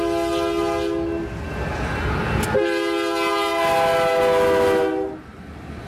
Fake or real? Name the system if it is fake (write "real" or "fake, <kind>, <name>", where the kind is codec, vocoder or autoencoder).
real